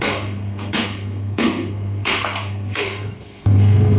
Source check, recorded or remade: remade